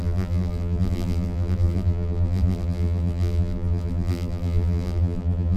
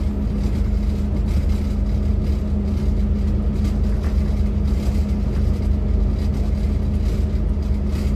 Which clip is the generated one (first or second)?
first